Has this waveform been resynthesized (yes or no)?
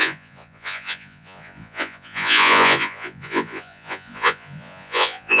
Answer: yes